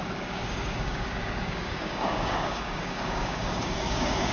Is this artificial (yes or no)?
yes